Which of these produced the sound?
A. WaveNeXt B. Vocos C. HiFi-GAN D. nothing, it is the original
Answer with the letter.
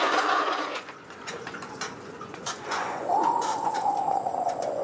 B